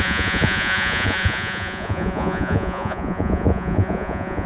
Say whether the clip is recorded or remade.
remade